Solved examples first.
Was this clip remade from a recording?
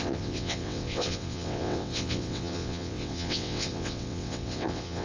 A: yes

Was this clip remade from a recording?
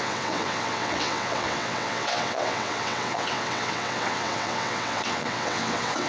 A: yes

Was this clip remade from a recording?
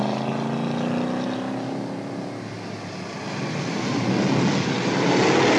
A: no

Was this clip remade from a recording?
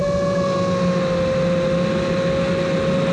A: no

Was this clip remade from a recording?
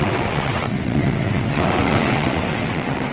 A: yes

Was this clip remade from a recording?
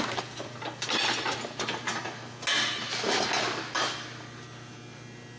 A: no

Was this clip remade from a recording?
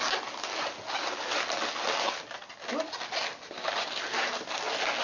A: no